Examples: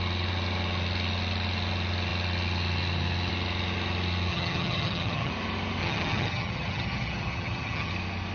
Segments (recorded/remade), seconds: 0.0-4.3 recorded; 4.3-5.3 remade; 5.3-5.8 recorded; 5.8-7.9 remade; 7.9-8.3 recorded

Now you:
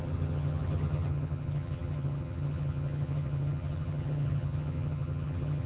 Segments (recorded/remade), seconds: 0.0-5.7 remade

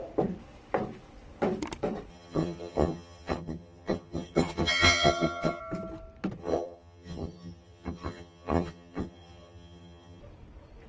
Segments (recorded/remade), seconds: 0.0-2.1 recorded; 2.1-5.6 remade; 5.6-6.4 recorded; 6.4-10.2 remade; 10.2-10.9 recorded

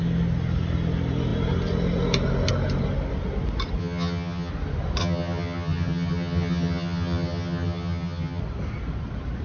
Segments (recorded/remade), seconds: 0.0-3.8 recorded; 3.8-4.5 remade; 4.5-5.0 recorded; 5.0-8.4 remade; 8.4-9.4 recorded